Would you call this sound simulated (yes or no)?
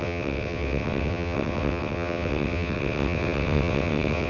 yes